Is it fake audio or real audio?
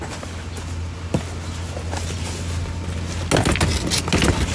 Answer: real